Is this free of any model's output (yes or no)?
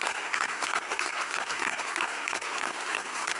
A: no